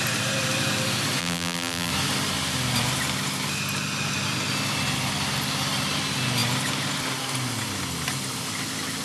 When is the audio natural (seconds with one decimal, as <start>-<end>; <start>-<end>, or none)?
0.0-1.2; 1.9-9.0